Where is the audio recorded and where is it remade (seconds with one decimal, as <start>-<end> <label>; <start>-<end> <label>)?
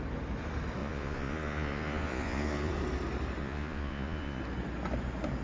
0.0-0.8 recorded; 0.8-2.7 remade; 2.7-3.4 recorded; 3.4-4.4 remade; 4.4-5.4 recorded